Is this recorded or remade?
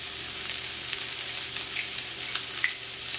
recorded